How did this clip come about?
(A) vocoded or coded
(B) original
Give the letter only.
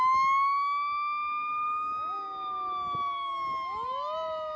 B